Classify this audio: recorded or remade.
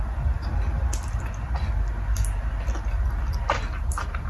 recorded